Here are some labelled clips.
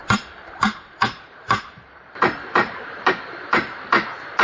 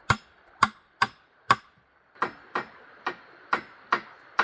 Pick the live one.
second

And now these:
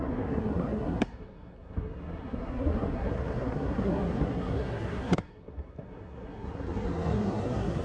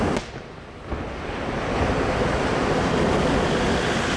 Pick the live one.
second